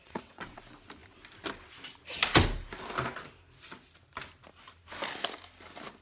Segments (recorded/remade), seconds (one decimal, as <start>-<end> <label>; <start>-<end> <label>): 0.0-0.6 remade; 0.6-6.0 recorded